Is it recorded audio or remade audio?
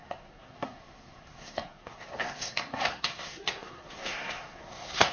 remade